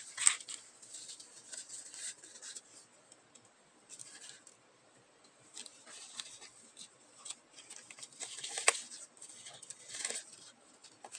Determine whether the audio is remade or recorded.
recorded